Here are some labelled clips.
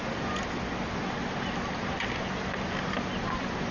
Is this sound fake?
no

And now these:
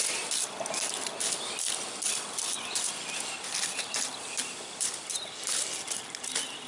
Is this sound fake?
no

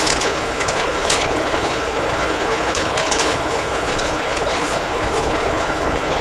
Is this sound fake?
yes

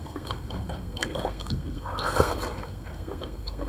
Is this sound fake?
yes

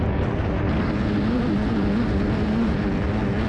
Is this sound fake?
no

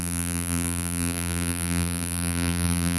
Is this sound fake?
yes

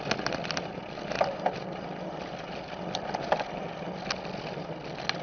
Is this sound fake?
no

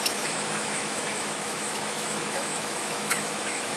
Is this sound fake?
yes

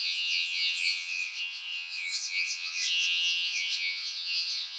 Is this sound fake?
yes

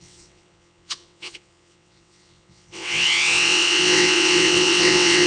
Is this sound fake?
yes